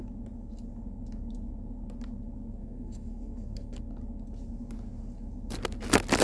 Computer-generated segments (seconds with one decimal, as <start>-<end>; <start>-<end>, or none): 2.6-3.8